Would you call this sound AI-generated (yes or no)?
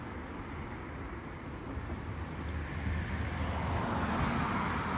no